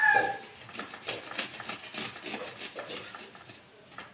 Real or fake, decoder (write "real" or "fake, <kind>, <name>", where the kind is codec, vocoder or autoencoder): real